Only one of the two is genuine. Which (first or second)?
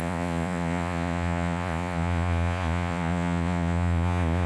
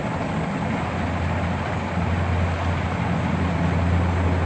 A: second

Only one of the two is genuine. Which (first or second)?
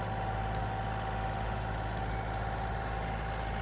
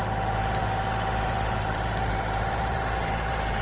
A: first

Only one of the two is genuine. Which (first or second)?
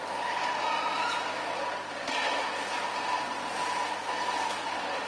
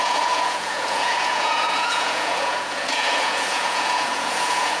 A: first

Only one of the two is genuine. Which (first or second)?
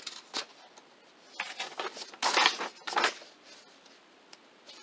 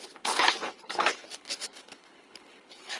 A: first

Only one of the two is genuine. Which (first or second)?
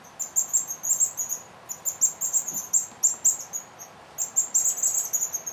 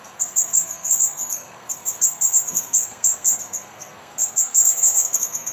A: first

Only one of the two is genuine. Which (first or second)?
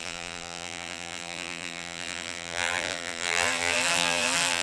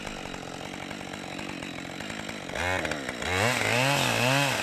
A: second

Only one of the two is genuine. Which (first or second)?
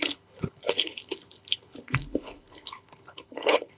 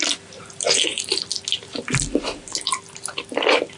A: second